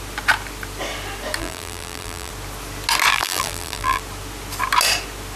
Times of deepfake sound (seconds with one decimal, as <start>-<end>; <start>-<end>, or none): 1.4-2.3; 3.1-4.0